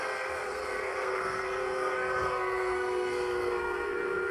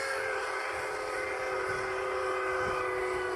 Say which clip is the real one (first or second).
second